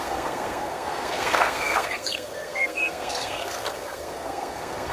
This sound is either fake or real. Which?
fake